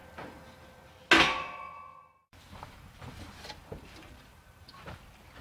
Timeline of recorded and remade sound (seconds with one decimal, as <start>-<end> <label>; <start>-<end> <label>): 0.0-0.9 remade; 0.9-2.2 recorded; 2.2-3.0 remade; 3.0-3.6 recorded; 3.6-4.7 remade; 4.7-5.4 recorded